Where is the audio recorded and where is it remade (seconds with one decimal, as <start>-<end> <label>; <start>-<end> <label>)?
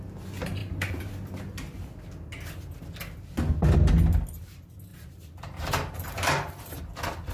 0.0-0.6 recorded; 0.6-1.1 remade; 1.1-4.9 recorded; 4.9-6.8 remade; 6.8-7.3 recorded